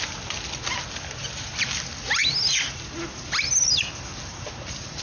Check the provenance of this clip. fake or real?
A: real